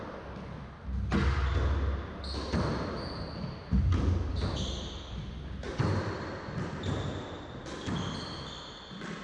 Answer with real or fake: real